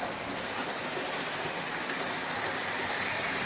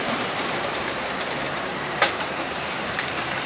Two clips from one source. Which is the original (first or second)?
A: first